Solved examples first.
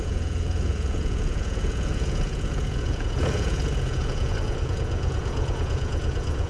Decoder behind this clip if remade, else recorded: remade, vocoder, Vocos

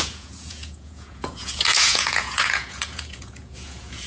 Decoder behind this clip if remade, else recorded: remade, vocoder, Vocos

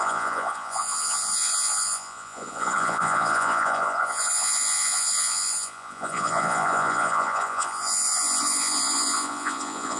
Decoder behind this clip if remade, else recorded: remade, vocoder, Vocos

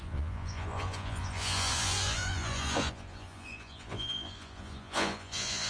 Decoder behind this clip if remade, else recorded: remade, vocoder, Vocos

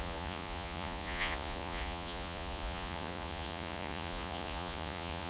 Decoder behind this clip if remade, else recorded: remade, vocoder, Vocos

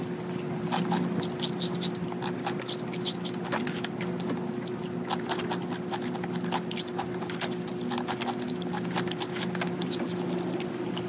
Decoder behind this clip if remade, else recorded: recorded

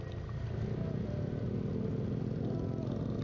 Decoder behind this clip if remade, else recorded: recorded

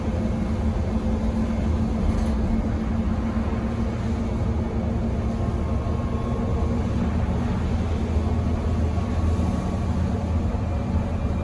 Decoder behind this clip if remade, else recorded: recorded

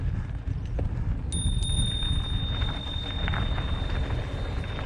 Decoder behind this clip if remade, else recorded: recorded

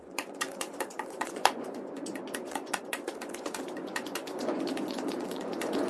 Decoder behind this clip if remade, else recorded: remade, vocoder, Vocos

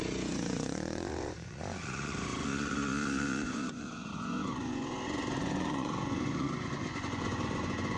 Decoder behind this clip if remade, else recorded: remade, vocoder, Vocos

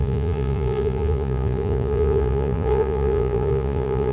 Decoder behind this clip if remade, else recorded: remade, vocoder, Vocos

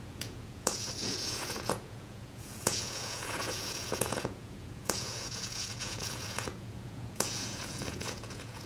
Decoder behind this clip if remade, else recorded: remade, vocoder, Vocos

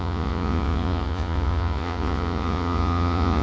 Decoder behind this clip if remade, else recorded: remade, vocoder, Vocos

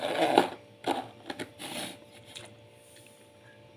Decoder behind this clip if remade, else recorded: recorded